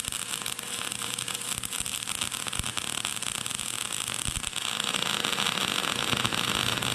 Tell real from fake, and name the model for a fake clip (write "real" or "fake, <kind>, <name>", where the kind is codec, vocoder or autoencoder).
real